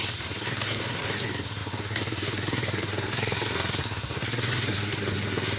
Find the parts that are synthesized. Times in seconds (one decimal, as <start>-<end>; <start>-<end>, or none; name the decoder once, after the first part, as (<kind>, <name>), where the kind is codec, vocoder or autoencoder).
0.0-5.6 (codec, SNAC)